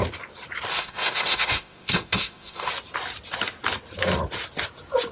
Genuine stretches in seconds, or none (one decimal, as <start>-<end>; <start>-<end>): 0.0-0.7; 2.7-5.1